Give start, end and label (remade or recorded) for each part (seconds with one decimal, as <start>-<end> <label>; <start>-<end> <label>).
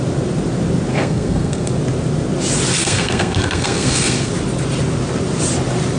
0.0-0.9 recorded; 0.9-1.7 remade; 1.7-2.8 recorded; 2.8-4.3 remade; 4.3-6.0 recorded